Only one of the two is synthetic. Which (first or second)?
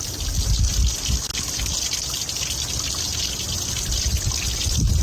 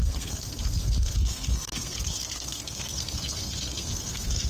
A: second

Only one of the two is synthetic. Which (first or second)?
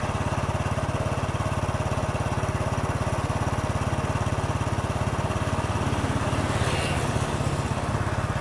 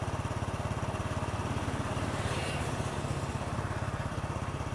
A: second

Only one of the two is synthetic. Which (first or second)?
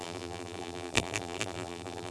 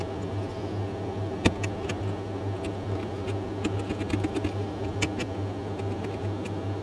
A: first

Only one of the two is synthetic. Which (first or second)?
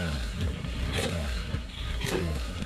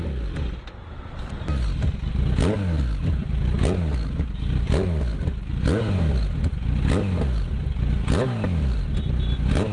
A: first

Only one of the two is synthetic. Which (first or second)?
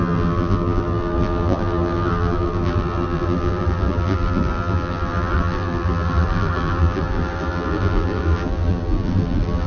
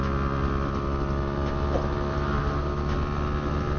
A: first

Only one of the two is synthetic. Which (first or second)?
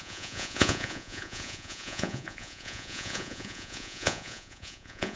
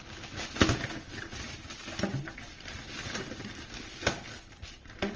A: first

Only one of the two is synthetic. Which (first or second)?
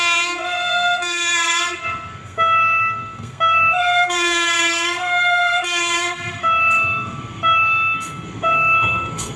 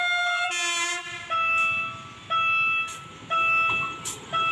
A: first